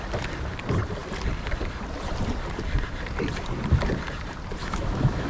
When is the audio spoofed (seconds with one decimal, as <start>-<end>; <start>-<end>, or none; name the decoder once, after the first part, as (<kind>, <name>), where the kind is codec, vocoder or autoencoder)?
4.6-5.3 (autoencoder, DAC-VAE)